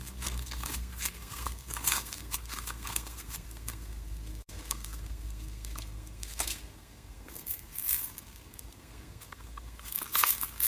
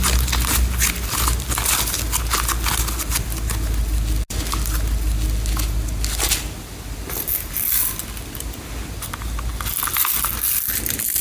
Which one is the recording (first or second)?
second